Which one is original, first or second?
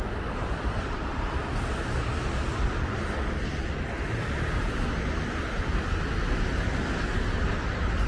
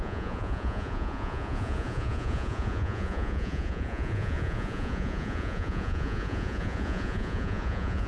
first